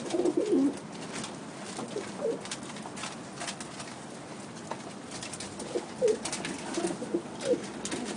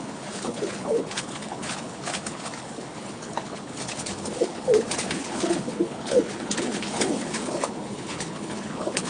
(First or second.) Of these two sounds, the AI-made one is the second